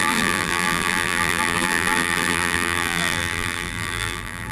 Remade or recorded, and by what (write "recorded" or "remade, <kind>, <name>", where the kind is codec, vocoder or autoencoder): remade, vocoder, BigVGAN v2